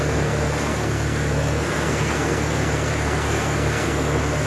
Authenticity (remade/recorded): remade